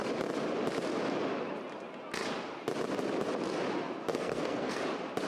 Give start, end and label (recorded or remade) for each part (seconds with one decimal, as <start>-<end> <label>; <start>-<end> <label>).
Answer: 0.0-4.1 recorded; 4.1-4.8 remade; 4.8-5.3 recorded